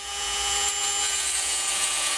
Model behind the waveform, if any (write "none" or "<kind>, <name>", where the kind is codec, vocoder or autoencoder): vocoder, Vocos